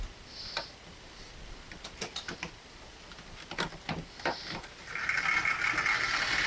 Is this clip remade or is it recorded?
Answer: recorded